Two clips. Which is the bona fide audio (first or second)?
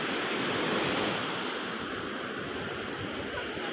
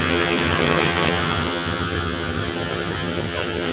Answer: first